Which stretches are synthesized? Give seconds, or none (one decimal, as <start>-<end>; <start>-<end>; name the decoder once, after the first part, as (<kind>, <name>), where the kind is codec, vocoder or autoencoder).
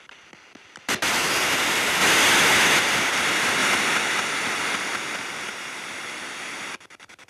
0.0-2.0 (vocoder, BigVGAN v2); 2.8-3.6; 6.4-7.3